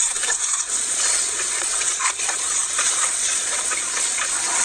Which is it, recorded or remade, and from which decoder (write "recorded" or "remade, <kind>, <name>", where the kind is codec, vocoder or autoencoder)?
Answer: remade, vocoder, Vocos